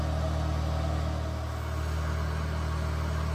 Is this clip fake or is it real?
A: real